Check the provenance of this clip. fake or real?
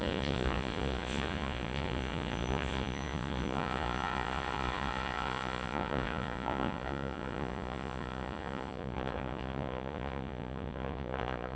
fake